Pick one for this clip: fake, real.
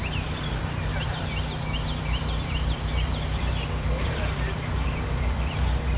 fake